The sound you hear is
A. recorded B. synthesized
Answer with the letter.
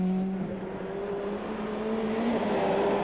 A